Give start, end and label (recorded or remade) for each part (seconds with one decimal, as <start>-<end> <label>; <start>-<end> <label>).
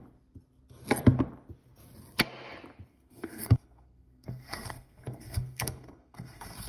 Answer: 0.0-2.9 recorded; 2.9-6.7 remade